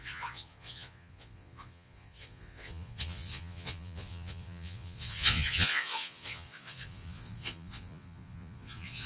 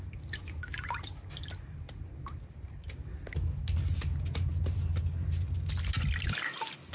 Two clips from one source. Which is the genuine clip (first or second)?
second